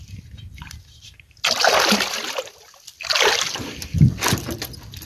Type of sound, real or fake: real